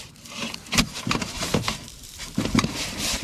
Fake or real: fake